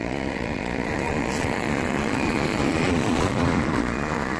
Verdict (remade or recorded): remade